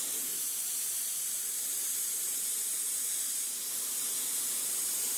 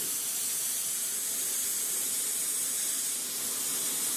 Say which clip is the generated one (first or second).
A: first